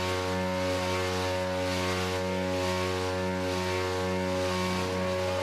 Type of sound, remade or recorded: recorded